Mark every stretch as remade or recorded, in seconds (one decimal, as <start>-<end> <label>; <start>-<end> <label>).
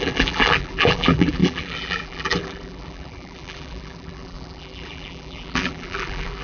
0.0-6.4 remade